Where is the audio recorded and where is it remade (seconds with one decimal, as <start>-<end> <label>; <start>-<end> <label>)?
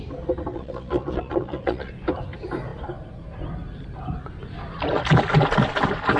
0.0-0.5 recorded; 0.5-1.9 remade; 1.9-6.2 recorded